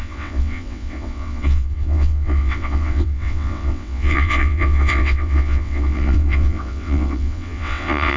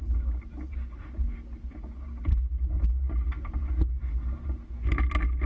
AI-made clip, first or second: first